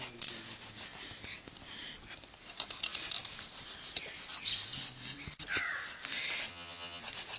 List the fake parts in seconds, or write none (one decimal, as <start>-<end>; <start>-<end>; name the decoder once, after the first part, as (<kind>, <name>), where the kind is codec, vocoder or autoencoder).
6.5-7.0 (vocoder, HiFi-GAN)